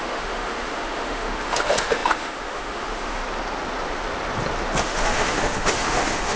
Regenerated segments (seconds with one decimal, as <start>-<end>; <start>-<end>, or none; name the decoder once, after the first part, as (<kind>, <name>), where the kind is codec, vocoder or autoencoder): 0.0-3.2 (autoencoder, DAC-VAE); 4.8-6.4